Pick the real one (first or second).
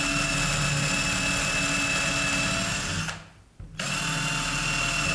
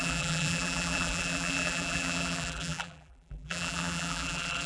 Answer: first